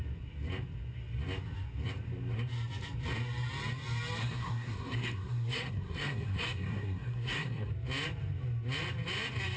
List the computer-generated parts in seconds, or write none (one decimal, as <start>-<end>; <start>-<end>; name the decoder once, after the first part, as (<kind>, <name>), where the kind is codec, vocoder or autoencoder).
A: 4.2-7.7 (codec, SNAC)